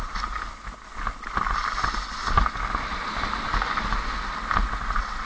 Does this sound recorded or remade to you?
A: recorded